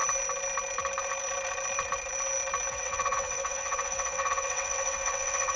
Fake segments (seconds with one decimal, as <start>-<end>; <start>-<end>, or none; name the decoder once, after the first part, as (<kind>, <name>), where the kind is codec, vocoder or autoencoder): 2.7-5.6 (vocoder, WaveNeXt)